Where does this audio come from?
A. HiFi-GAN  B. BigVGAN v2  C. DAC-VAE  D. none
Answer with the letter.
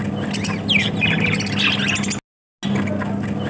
D